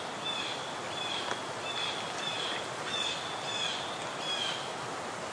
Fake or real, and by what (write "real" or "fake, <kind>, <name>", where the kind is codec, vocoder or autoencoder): real